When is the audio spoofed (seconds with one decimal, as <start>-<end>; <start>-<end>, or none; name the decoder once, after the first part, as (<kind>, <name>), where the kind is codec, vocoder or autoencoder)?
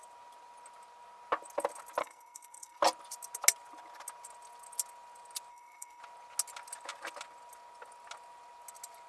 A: 2.0-2.8 (codec, SNAC); 5.5-6.0